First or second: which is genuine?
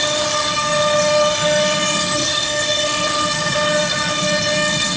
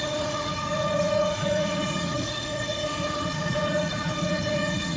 first